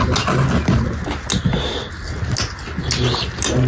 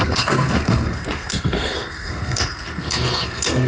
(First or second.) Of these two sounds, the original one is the first